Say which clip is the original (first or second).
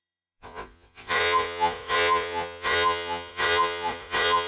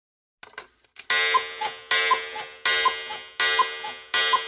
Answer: second